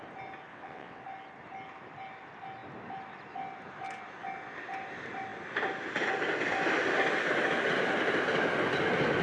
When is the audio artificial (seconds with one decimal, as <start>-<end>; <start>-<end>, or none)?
0.5-1.0

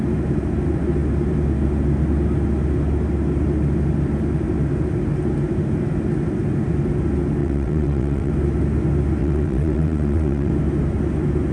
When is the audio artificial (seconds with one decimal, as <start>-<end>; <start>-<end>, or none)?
7.4-8.3; 9.2-10.5